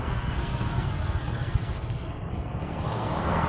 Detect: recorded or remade remade